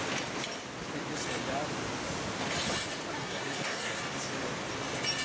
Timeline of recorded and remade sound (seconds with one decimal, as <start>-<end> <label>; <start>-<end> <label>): 0.0-3.2 recorded; 3.2-4.0 remade; 4.0-5.2 recorded